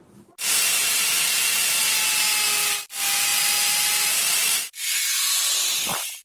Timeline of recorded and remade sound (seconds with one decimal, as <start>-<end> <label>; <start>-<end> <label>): 0.0-0.8 recorded; 0.8-1.8 remade; 1.8-3.3 recorded; 3.3-5.5 remade; 5.5-6.2 recorded